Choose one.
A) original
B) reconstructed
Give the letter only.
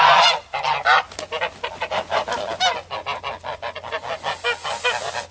A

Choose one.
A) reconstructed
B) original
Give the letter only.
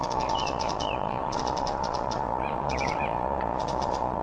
A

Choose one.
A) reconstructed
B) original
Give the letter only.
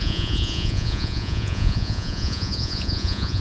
A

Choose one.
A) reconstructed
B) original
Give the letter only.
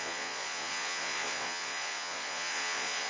A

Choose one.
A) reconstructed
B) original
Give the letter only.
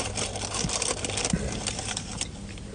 B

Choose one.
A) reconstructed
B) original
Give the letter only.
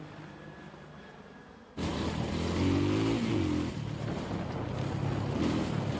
B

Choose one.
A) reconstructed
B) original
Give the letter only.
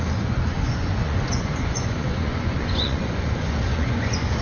A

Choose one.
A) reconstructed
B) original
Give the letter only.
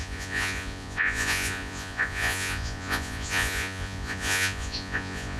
A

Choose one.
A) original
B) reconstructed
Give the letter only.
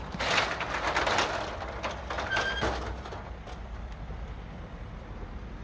A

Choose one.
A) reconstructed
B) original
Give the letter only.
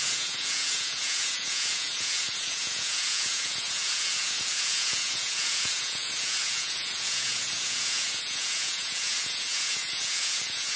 A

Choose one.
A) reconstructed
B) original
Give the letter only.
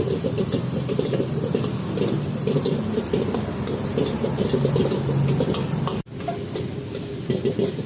B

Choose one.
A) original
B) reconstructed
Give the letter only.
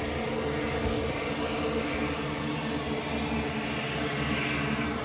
A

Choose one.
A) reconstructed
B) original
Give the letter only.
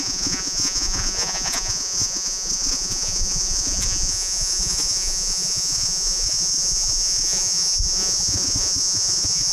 A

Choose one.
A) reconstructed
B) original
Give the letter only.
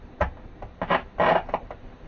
B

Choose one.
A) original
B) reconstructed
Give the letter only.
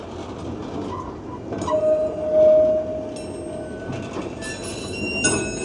A